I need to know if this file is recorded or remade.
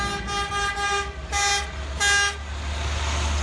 recorded